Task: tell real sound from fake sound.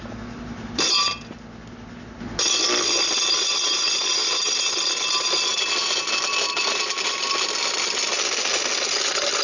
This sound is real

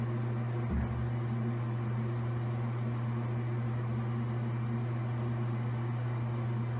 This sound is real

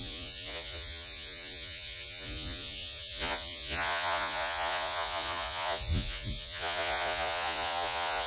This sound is fake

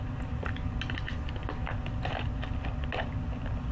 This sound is real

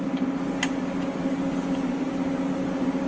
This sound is real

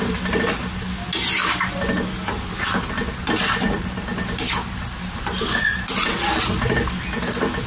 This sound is real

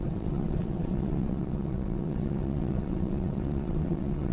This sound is fake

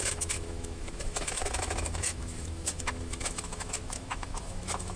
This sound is fake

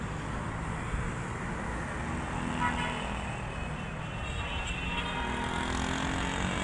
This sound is real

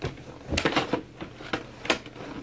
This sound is real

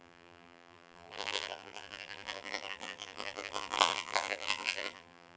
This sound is fake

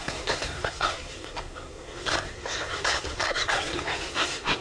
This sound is fake